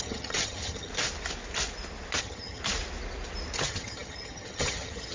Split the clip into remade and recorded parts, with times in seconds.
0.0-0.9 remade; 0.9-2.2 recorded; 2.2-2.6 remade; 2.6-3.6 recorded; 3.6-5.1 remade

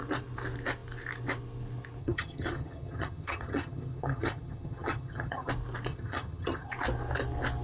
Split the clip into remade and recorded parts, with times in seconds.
0.0-2.0 recorded; 2.0-5.5 remade; 5.5-5.9 recorded; 5.9-6.7 remade; 6.7-7.6 recorded

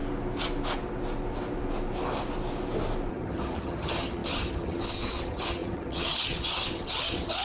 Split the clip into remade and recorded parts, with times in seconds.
0.0-3.1 recorded; 3.1-7.4 remade